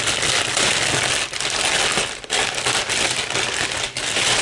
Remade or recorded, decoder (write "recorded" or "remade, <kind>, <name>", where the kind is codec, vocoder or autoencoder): recorded